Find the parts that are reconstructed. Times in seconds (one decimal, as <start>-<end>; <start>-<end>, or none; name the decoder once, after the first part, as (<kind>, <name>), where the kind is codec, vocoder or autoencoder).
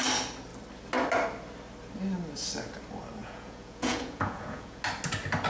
3.2-4.8 (vocoder, Vocos)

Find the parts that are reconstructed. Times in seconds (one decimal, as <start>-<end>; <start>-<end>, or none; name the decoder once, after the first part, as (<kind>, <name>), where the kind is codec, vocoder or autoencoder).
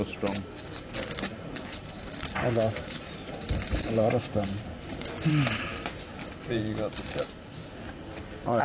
1.3-5.3 (vocoder, BigVGAN v2)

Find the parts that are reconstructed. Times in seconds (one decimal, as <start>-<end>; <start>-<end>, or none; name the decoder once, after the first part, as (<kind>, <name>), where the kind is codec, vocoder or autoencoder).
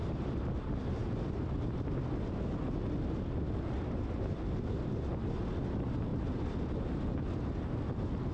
none